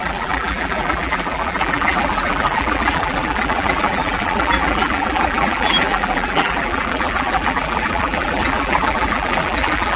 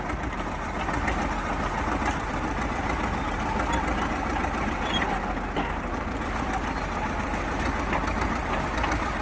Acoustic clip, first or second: second